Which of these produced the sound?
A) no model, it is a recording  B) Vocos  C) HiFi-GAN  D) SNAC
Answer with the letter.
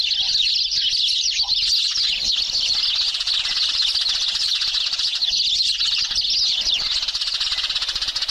A